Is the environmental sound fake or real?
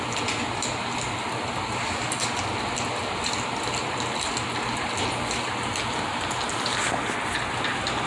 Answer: real